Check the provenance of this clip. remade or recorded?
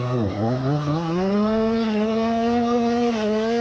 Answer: remade